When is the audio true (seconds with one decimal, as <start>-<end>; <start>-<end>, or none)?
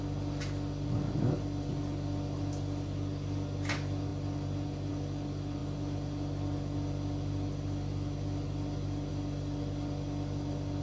0.0-10.8